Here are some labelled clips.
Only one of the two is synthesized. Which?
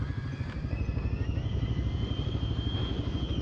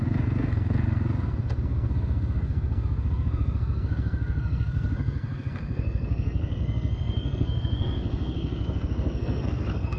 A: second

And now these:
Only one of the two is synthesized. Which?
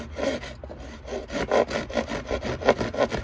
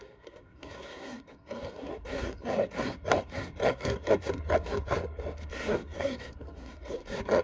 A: second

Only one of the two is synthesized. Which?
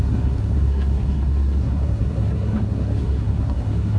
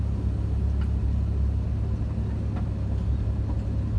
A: first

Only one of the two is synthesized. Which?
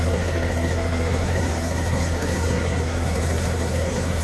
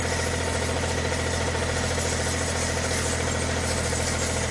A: first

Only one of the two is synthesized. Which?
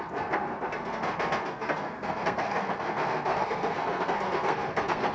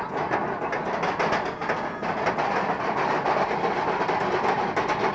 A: first